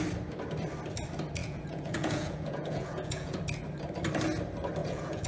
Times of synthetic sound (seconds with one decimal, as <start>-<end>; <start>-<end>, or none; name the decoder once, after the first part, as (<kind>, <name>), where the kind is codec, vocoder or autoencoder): 1.4-3.4 (vocoder, Vocos); 4.8-5.3